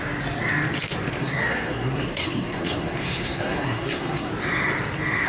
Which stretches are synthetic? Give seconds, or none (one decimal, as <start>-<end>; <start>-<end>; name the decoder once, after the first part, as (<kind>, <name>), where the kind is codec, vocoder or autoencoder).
1.2-4.3 (codec, SNAC)